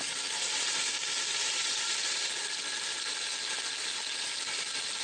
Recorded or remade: recorded